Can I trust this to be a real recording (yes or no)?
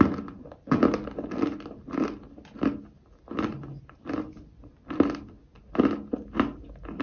yes